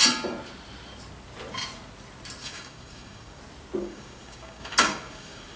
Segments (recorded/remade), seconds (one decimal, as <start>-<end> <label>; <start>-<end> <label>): 0.0-2.4 recorded; 2.4-3.4 remade; 3.4-3.8 recorded; 3.8-5.6 remade